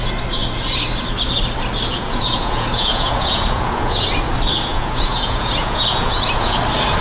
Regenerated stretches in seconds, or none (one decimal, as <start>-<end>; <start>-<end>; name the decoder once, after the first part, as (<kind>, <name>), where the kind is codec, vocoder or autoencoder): 1.9-4.0 (vocoder, Vocos); 4.7-6.6